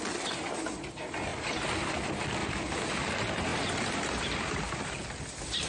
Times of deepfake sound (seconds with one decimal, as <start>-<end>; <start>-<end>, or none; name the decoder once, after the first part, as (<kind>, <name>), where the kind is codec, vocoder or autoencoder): 2.4-3.0 (vocoder, BigVGAN v2); 3.5-5.0